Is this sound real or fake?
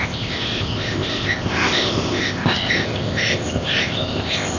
fake